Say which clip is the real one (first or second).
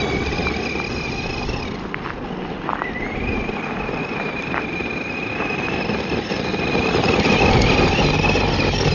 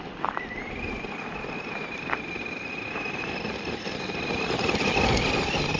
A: first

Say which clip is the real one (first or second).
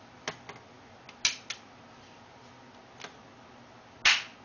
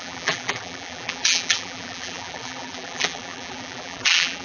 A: first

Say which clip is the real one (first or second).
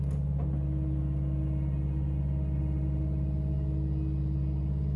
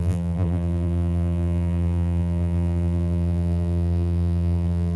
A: first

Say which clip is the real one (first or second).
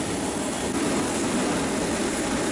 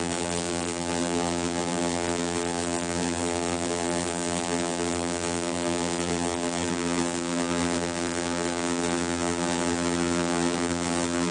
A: first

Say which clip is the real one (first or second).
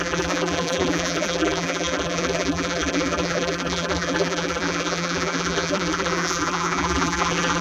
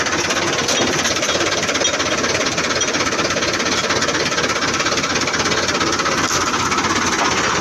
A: second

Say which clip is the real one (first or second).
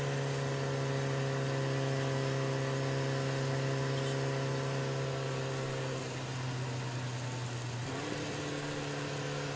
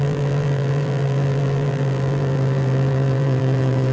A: first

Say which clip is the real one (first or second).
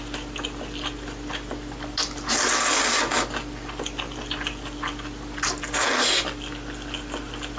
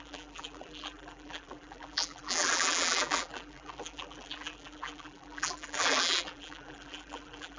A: first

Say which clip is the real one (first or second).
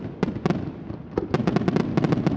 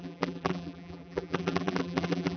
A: first